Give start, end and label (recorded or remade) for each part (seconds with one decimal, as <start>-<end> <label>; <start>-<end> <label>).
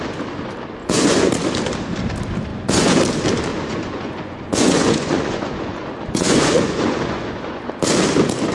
0.0-0.8 recorded; 0.8-1.3 remade; 1.3-2.5 recorded; 2.5-3.0 remade; 3.0-3.5 recorded; 3.5-7.7 remade; 7.7-8.5 recorded